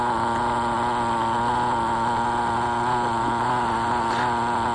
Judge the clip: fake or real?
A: real